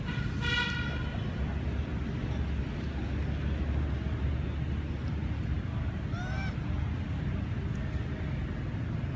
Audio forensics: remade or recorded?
recorded